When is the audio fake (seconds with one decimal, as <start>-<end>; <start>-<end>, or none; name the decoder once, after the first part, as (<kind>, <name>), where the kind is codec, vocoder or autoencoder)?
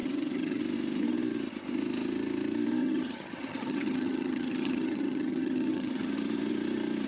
0.0-0.6 (vocoder, HiFi-GAN); 2.8-6.1